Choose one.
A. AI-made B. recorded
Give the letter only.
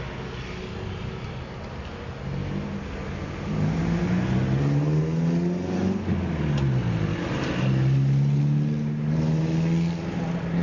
B